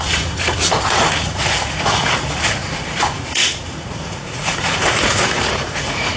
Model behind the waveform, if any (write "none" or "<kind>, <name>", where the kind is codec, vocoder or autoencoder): vocoder, Vocos